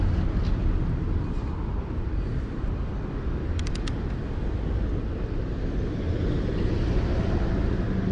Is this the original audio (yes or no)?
yes